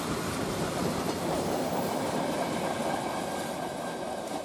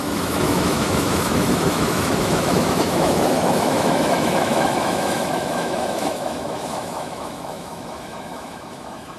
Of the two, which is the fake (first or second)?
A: second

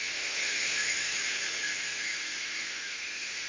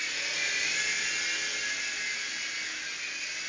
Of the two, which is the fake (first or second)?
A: first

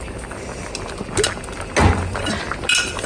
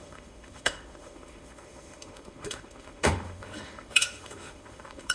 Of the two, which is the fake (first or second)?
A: second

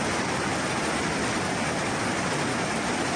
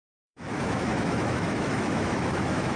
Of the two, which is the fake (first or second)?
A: second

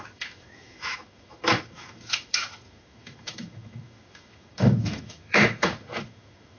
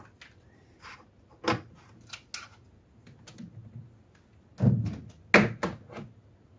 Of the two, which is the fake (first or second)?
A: first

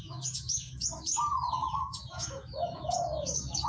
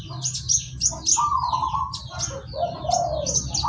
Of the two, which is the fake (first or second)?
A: first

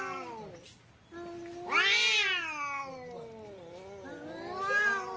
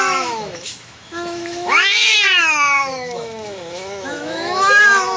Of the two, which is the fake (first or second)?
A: second